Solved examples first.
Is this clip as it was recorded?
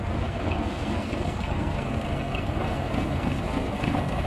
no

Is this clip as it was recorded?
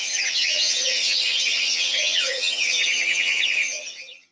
no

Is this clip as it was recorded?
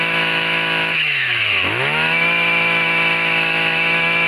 no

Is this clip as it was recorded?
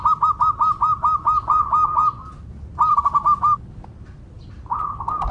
yes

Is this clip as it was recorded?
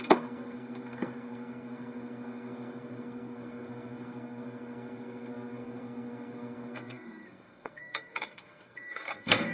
no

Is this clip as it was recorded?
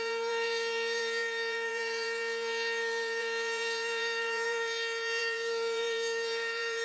no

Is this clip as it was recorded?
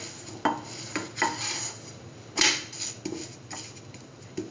yes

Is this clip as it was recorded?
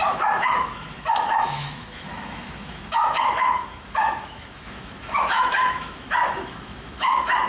no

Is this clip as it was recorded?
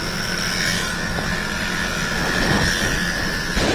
yes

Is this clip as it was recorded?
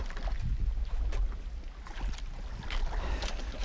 yes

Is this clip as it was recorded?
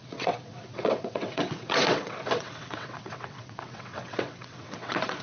no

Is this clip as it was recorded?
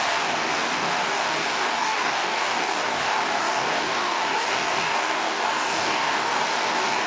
no